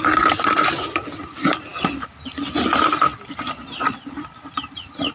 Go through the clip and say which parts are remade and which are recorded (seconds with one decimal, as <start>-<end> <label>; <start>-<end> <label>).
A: 0.0-5.1 recorded